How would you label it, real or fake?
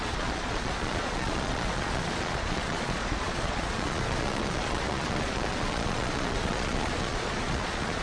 fake